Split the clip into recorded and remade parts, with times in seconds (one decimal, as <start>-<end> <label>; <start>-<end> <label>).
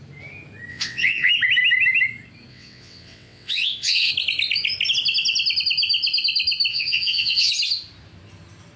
0.0-0.7 recorded; 0.7-1.3 remade; 1.3-2.5 recorded; 2.5-4.1 remade; 4.1-6.7 recorded; 6.7-7.5 remade; 7.5-8.8 recorded